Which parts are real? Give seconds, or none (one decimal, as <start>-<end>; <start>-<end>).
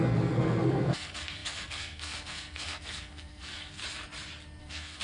3.8-4.6